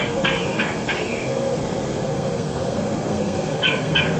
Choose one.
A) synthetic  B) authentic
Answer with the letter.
A